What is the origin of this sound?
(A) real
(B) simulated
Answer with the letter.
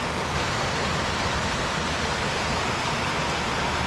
A